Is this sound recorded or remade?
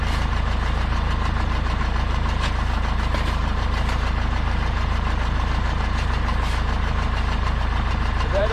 remade